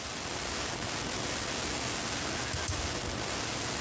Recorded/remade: recorded